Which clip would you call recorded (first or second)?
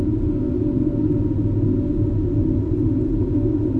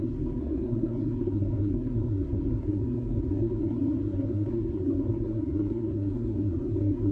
first